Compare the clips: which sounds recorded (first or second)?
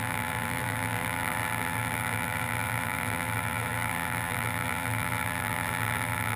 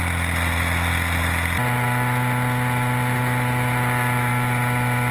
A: second